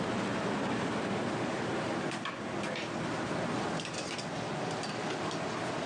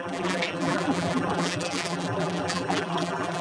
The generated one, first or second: second